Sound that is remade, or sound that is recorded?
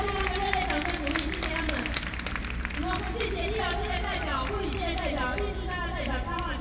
recorded